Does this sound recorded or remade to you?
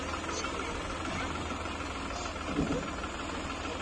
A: recorded